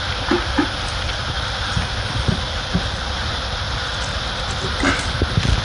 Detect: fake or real real